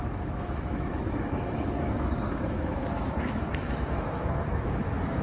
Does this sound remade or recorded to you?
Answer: remade